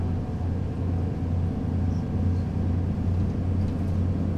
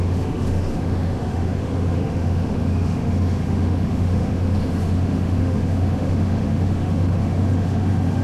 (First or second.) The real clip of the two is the first